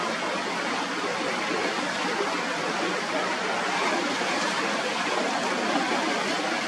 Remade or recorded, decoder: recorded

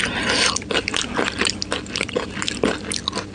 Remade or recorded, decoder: recorded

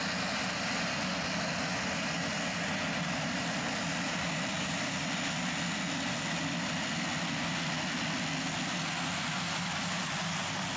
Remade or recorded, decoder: recorded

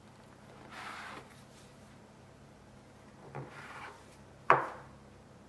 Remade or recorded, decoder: remade, vocoder, BigVGAN v2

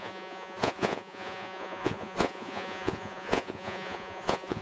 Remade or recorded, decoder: remade, vocoder, Vocos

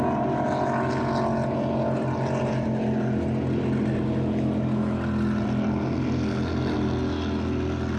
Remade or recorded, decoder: recorded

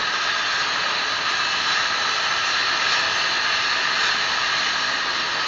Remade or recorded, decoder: recorded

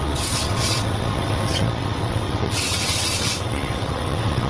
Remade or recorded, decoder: remade, vocoder, WaveNeXt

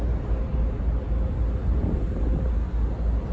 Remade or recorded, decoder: recorded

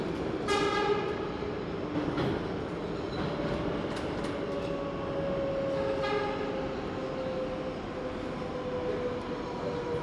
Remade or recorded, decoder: recorded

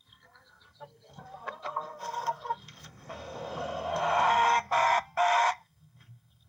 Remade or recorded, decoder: remade, codec, SNAC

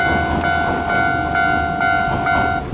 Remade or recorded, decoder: recorded